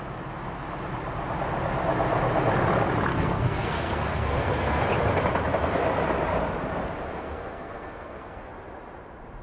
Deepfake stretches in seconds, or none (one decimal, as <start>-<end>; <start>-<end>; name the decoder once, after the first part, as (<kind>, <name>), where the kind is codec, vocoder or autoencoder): 3.1-4.8 (codec, SNAC); 7.1-8.5